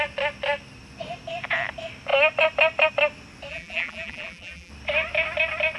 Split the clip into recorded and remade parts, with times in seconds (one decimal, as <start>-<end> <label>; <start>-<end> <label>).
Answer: 0.0-3.5 recorded; 3.5-4.7 remade; 4.7-5.8 recorded